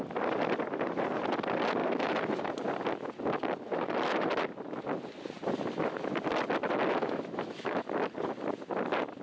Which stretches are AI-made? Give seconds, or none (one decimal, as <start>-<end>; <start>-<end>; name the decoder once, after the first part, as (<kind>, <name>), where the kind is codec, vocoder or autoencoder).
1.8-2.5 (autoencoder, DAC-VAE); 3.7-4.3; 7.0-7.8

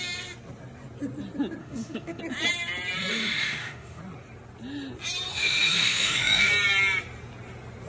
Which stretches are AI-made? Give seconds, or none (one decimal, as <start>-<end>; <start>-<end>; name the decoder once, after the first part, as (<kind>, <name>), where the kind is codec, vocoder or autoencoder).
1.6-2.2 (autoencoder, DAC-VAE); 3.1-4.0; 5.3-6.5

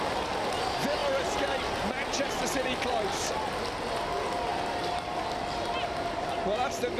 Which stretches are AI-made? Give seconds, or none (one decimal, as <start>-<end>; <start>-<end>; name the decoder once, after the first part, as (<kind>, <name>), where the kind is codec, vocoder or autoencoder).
none

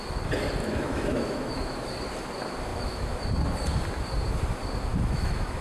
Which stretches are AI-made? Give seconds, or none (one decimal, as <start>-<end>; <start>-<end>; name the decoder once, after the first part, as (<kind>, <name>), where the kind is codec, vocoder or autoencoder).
0.6-1.8 (autoencoder, DAC-VAE); 2.7-3.2; 4.9-5.6

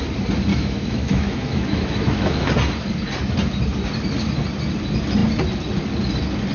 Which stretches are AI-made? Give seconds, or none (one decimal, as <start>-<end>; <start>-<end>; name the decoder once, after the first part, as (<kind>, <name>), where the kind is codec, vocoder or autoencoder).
0.5-2.5 (autoencoder, DAC-VAE)

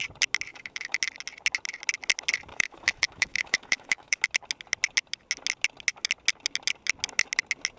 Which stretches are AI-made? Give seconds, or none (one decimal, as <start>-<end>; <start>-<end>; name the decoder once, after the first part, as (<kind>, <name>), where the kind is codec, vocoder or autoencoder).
0.5-1.0 (autoencoder, DAC-VAE); 2.5-4.2

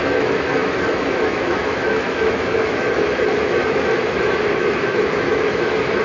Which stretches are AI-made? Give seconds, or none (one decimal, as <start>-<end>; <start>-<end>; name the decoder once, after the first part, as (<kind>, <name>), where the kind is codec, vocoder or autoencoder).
0.0-6.0 (autoencoder, DAC-VAE)